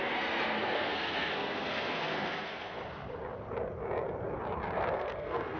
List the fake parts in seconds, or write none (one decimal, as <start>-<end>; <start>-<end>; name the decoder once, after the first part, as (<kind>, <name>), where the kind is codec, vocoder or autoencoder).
0.0-2.8 (codec, SNAC); 4.9-5.6